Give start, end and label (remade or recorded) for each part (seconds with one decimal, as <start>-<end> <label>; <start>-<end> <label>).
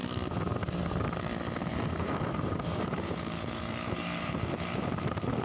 0.0-1.7 recorded; 1.7-4.9 remade; 4.9-5.4 recorded